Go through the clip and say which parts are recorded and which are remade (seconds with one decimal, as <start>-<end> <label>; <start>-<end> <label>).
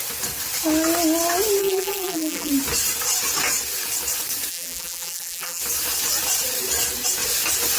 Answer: 0.0-1.6 recorded; 1.6-2.5 remade; 2.5-4.5 recorded; 4.5-5.6 remade; 5.6-7.8 recorded